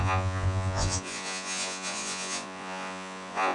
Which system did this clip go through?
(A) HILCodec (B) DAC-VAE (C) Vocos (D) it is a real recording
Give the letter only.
C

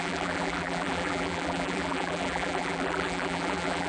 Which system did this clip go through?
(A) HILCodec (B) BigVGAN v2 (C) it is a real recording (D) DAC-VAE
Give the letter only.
B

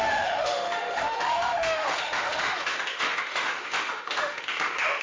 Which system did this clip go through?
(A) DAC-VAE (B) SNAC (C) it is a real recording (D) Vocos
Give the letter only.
A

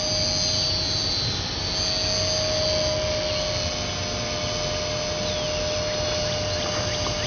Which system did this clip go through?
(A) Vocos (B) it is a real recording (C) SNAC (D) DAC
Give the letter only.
B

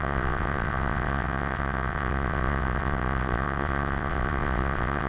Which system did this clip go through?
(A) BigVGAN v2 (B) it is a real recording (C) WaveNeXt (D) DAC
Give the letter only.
C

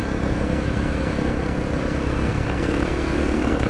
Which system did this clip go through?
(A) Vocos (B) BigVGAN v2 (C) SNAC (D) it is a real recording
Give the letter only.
C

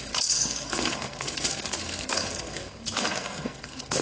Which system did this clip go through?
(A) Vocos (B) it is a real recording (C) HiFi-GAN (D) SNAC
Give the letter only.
D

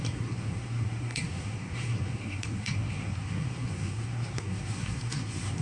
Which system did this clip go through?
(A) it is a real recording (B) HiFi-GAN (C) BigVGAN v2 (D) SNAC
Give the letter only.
D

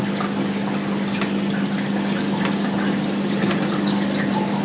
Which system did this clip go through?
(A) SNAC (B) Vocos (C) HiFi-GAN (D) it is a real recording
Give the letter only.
D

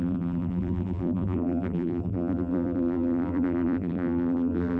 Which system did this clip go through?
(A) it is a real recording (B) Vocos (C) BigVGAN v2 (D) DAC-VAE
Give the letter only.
C